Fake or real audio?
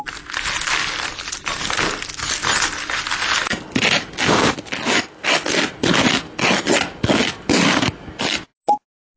real